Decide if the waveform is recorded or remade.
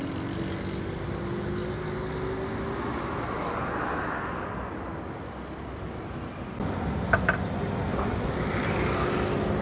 recorded